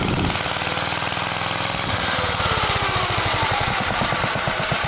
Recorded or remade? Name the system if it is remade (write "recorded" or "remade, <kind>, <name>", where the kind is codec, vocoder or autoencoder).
recorded